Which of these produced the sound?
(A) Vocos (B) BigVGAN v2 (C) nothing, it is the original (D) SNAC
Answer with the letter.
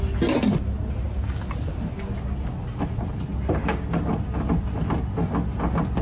C